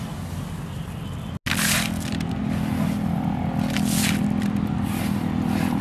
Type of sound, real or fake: real